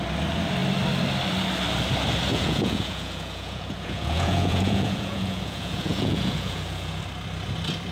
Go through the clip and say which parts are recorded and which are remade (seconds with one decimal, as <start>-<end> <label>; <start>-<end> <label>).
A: 0.0-2.3 recorded; 2.3-7.0 remade; 7.0-7.9 recorded